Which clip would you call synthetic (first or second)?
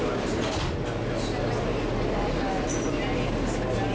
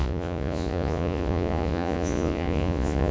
second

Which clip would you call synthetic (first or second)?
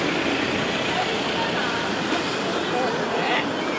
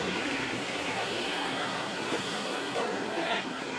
second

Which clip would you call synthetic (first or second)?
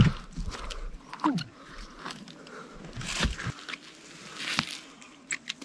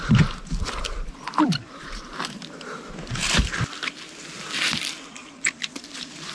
second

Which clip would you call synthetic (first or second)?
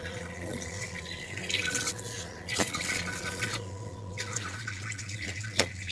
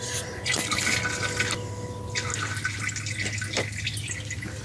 first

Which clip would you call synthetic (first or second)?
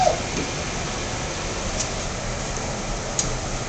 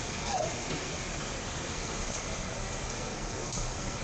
second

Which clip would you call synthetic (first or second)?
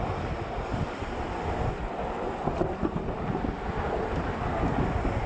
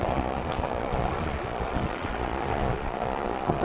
second